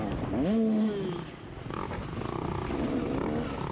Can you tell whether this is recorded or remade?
recorded